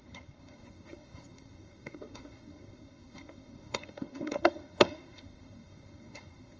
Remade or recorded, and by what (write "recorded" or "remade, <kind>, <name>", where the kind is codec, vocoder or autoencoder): remade, codec, SNAC